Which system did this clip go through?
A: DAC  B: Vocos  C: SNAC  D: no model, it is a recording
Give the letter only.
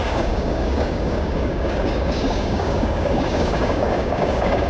A